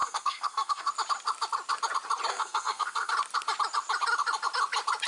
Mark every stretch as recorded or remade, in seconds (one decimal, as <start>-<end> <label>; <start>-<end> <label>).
0.0-0.9 remade; 0.9-2.3 recorded; 2.3-3.1 remade; 3.1-5.1 recorded